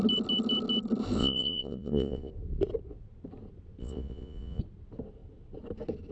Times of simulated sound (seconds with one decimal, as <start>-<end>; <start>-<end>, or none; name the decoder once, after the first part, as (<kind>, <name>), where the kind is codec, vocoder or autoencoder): 1.2-2.3 (vocoder, Vocos); 3.8-4.6